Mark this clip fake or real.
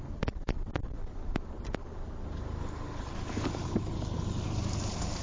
fake